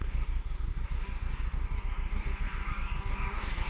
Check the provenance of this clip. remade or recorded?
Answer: remade